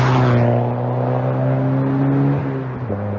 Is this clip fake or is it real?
real